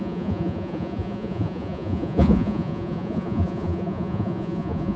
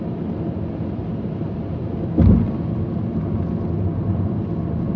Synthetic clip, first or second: first